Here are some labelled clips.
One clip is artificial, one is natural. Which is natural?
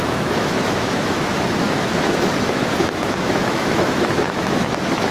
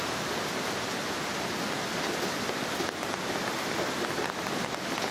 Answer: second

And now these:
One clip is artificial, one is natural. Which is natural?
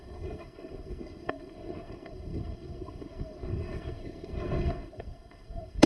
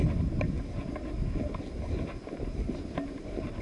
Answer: second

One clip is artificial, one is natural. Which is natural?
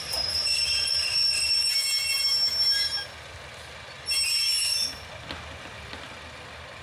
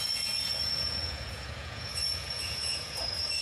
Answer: first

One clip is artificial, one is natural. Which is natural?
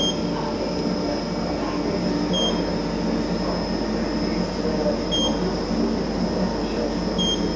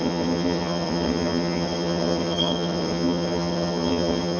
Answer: first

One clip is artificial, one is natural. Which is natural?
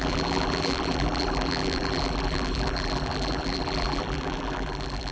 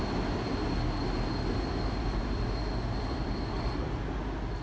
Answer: second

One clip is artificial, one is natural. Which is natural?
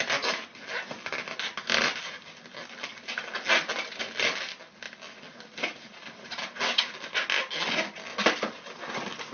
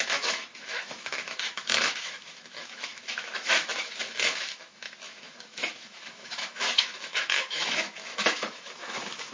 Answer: first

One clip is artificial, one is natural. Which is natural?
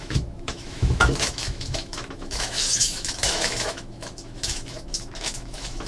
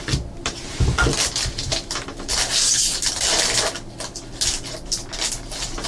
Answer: second